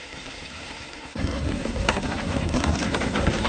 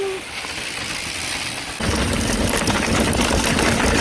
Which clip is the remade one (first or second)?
first